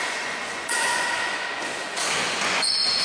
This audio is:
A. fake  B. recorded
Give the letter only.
A